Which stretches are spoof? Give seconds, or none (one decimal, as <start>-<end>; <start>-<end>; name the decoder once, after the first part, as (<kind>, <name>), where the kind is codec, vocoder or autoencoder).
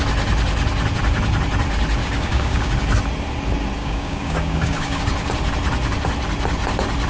2.0-2.7 (codec, DAC); 3.8-5.0